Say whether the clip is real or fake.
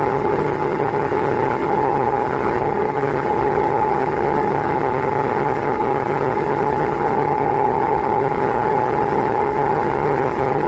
fake